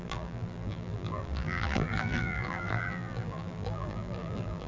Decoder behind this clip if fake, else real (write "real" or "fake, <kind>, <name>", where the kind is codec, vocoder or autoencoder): fake, vocoder, BigVGAN v2